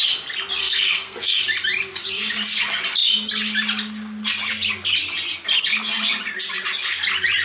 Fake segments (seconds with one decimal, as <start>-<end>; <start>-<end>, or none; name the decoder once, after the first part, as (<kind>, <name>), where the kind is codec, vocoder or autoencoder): 0.6-1.4 (codec, SNAC)

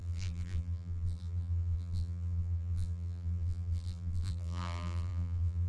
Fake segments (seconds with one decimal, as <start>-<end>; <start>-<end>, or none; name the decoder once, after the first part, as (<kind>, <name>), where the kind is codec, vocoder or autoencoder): 0.0-5.7 (vocoder, BigVGAN v2)

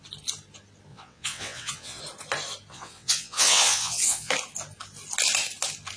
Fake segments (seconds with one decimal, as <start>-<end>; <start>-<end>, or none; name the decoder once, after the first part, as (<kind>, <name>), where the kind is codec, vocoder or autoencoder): 0.9-2.0 (vocoder, WaveNeXt); 2.7-4.3